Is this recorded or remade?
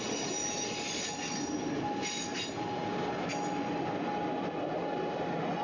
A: recorded